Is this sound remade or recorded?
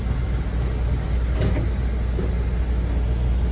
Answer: recorded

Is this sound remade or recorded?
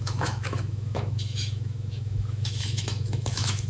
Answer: remade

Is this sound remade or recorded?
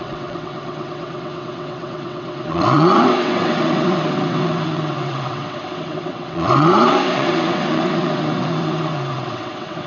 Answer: remade